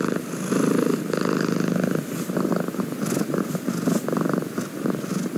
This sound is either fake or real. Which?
real